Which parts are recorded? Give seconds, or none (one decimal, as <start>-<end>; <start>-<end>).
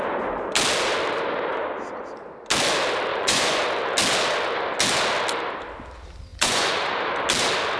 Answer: 0.0-3.1; 3.6-6.3; 6.9-7.8